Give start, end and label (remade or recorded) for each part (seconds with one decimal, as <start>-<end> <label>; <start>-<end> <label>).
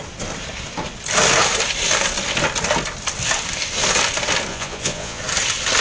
0.0-4.5 recorded; 4.5-5.2 remade; 5.2-5.8 recorded